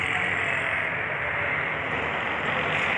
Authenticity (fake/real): real